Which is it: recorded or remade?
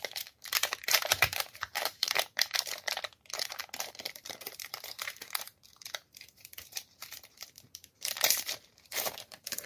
remade